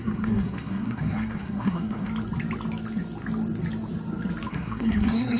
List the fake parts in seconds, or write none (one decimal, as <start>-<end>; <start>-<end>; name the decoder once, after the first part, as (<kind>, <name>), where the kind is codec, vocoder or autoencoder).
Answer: 0.0-2.1 (codec, SNAC); 4.5-5.4